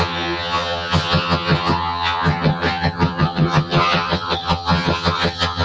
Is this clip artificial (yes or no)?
yes